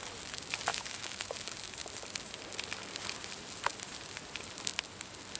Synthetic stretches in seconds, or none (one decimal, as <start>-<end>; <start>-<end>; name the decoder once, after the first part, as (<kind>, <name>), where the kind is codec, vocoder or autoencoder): 0.7-1.4 (autoencoder, DAC-VAE)